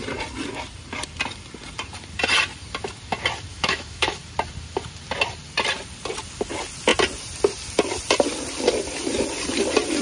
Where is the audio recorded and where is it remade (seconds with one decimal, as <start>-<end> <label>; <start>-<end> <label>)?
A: 0.0-3.5 recorded; 3.5-4.2 remade; 4.2-10.0 recorded